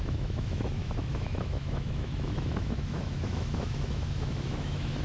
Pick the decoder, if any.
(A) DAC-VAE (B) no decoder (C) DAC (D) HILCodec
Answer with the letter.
A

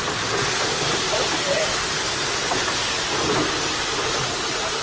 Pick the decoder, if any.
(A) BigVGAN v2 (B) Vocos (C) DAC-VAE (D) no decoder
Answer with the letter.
D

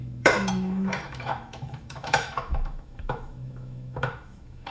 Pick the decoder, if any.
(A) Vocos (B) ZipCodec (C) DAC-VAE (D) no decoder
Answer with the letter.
C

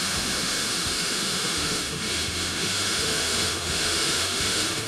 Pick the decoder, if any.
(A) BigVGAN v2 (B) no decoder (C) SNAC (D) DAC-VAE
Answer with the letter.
D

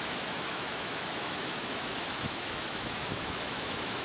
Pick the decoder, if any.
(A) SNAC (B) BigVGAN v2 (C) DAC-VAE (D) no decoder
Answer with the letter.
C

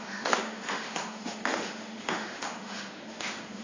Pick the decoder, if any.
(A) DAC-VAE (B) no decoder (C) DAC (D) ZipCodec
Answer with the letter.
A